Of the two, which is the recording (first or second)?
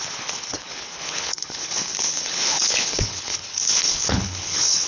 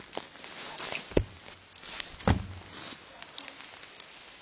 second